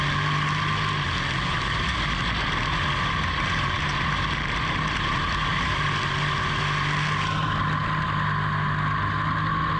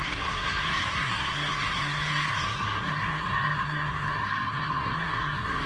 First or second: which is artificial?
second